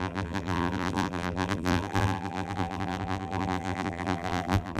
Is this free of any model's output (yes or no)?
no